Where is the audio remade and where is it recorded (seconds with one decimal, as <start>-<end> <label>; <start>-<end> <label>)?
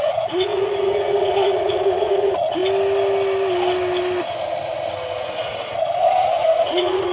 0.0-2.6 remade; 2.6-5.2 recorded; 5.2-7.1 remade